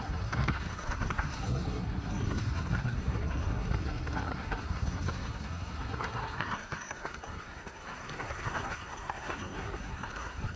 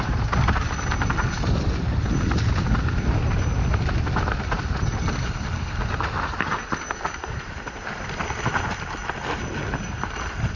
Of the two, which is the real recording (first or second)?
second